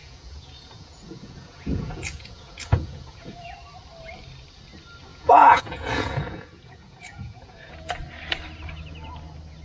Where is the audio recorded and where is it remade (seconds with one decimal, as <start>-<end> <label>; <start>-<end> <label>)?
0.0-3.5 remade; 3.5-5.1 recorded; 5.1-7.9 remade; 7.9-9.6 recorded